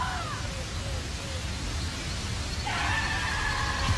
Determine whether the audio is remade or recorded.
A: recorded